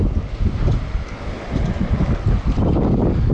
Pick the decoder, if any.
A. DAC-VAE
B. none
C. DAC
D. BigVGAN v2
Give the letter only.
B